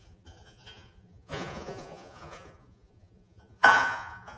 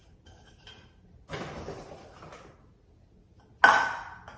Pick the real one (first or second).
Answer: second